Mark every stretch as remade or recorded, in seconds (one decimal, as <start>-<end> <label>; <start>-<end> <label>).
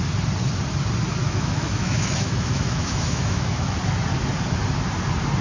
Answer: 0.0-1.2 recorded; 1.2-3.8 remade; 3.8-5.4 recorded